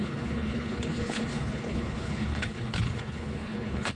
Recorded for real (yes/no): no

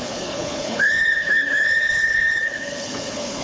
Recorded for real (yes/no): no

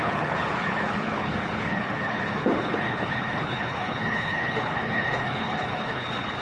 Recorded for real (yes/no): no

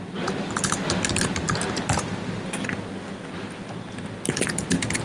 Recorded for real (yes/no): yes